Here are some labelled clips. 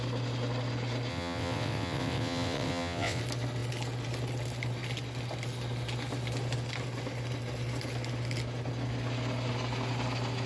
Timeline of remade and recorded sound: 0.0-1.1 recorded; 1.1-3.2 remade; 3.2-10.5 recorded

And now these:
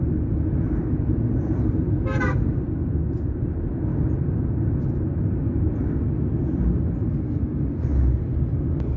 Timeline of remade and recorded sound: 0.0-9.0 recorded

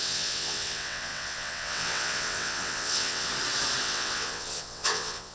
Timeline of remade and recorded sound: 0.0-3.3 remade; 3.3-3.8 recorded; 3.8-5.3 remade

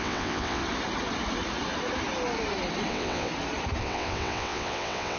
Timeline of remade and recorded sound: 0.0-0.6 remade; 0.6-2.9 recorded; 2.9-3.3 remade; 3.3-3.8 recorded; 3.8-5.2 remade

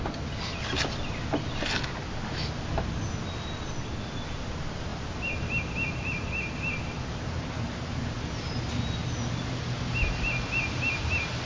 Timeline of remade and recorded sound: 0.0-11.5 recorded

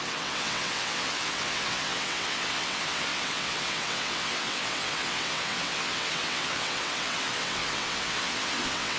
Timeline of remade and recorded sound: 0.0-9.0 remade

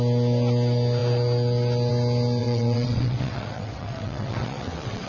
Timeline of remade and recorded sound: 0.0-2.4 recorded; 2.4-5.1 remade

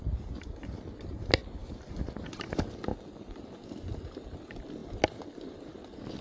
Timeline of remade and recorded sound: 0.0-6.2 recorded